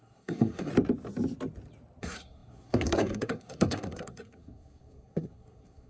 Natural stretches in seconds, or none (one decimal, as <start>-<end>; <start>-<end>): 0.7-2.0